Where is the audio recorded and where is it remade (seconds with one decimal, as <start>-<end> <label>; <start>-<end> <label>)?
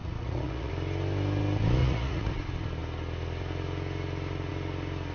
0.0-0.7 remade; 0.7-1.8 recorded; 1.8-2.3 remade; 2.3-5.1 recorded